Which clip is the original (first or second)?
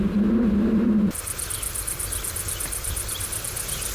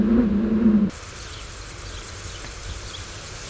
second